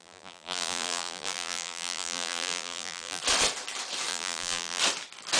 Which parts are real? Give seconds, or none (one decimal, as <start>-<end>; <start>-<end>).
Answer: 3.2-4.1; 4.8-5.4